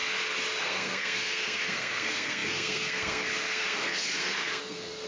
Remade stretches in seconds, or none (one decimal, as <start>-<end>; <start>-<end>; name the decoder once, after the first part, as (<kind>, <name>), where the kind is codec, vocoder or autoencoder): 0.6-5.1 (codec, SNAC)